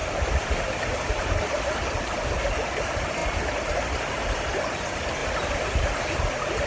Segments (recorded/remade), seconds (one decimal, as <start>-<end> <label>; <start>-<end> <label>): 0.0-1.6 remade; 1.6-5.2 recorded; 5.2-6.2 remade; 6.2-6.7 recorded